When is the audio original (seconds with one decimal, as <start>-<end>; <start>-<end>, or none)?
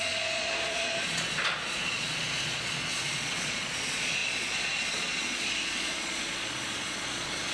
none